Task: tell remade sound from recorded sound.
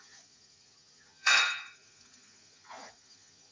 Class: remade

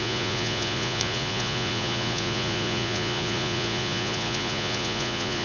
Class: remade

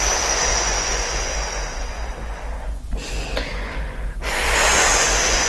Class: remade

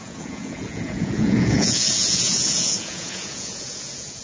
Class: remade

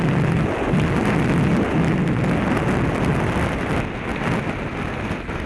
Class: recorded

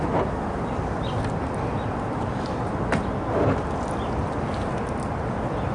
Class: recorded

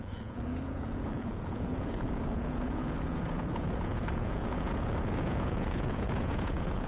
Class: remade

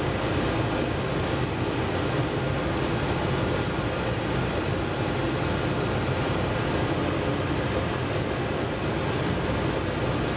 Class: recorded